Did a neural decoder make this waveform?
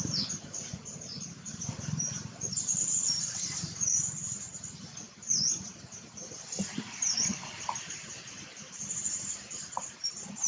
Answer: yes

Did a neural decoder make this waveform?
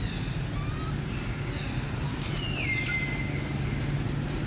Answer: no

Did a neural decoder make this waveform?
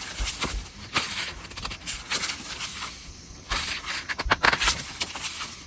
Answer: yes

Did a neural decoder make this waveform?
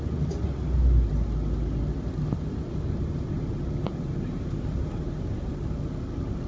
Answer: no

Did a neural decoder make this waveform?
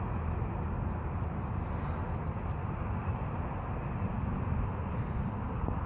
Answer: no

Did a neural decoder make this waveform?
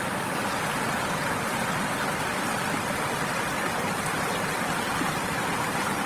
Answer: no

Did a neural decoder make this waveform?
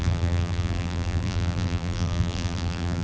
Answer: yes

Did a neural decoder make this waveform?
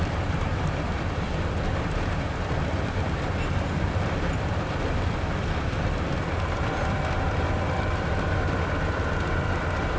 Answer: yes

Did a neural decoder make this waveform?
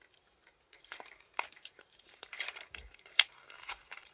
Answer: yes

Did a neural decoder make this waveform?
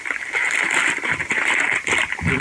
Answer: yes